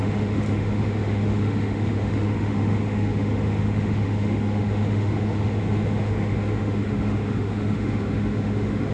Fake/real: fake